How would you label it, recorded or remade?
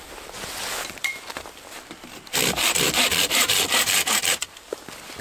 remade